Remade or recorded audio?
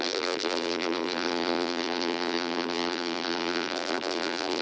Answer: remade